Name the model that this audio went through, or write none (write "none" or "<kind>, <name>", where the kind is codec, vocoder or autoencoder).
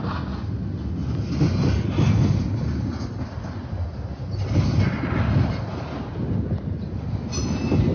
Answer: none